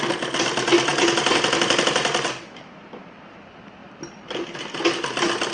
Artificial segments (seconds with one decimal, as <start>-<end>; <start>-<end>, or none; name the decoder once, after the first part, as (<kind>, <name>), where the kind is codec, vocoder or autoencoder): none